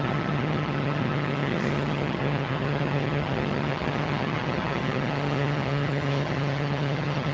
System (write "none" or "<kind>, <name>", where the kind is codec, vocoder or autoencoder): vocoder, HiFi-GAN